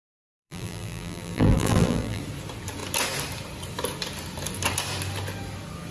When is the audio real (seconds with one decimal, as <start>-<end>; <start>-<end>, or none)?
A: 2.2-5.9